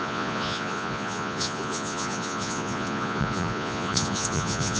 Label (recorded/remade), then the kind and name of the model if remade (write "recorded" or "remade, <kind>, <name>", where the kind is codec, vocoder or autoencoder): remade, vocoder, Vocos